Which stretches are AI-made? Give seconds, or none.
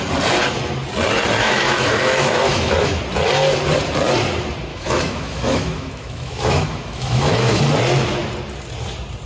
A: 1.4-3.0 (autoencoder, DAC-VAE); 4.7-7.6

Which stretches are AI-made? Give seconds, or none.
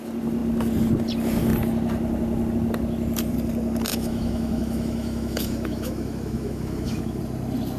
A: 3.9-7.2 (autoencoder, DAC-VAE)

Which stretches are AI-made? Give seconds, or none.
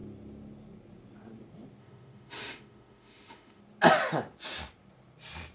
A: 1.8-3.6 (autoencoder, DAC-VAE)